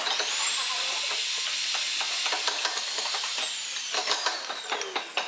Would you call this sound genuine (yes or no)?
yes